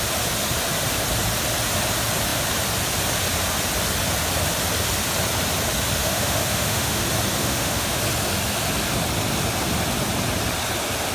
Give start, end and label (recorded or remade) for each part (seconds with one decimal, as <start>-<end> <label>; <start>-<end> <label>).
0.0-6.0 recorded; 6.0-7.0 remade; 7.0-7.4 recorded; 7.4-8.0 remade; 8.0-11.1 recorded